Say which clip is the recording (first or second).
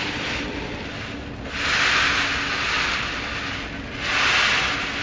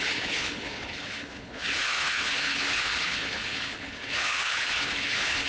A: first